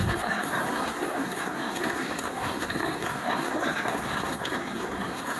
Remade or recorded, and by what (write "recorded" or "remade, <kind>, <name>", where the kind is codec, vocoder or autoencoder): remade, codec, SNAC